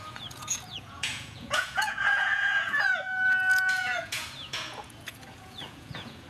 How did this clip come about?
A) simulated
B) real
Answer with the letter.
A